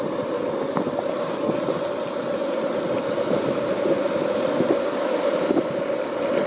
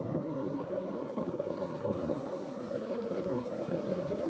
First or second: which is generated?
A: second